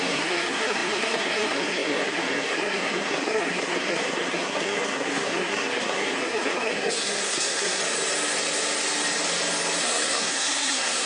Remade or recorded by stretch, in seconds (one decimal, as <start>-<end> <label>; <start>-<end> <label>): 0.0-7.8 remade; 7.8-9.8 recorded; 9.8-11.1 remade